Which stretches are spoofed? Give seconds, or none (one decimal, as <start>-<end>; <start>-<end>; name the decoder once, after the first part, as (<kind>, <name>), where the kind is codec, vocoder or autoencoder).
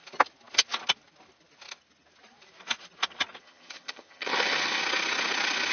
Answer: 3.4-4.8 (vocoder, HiFi-GAN)